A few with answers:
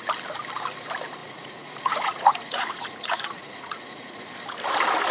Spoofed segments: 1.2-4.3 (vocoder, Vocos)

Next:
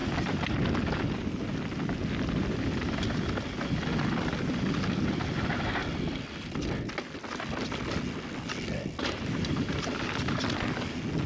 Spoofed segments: none

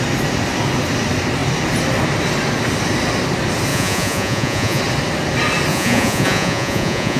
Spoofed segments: 3.7-4.8 (vocoder, Vocos); 5.7-7.2

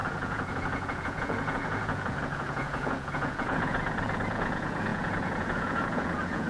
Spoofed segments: 0.0-6.5 (vocoder, Vocos)

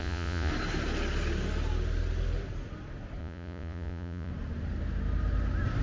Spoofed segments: 0.0-0.5 (vocoder, Vocos); 3.2-4.3